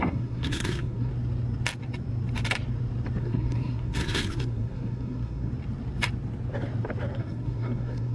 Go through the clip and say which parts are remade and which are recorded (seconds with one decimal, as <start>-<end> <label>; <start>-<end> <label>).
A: 0.0-1.1 remade; 1.1-3.2 recorded; 3.2-5.5 remade; 5.5-7.2 recorded; 7.2-8.1 remade